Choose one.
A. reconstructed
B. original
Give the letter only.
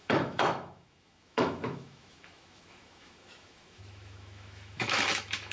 A